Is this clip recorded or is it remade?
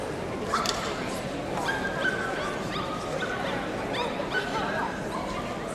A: recorded